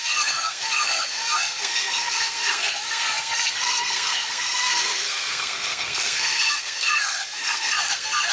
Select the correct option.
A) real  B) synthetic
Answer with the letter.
B